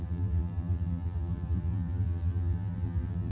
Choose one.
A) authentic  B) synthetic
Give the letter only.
B